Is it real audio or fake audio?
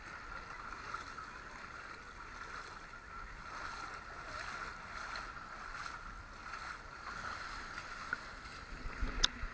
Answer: real